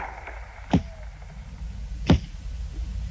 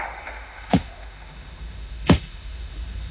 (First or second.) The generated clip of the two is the second